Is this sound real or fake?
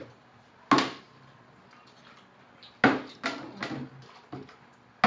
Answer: real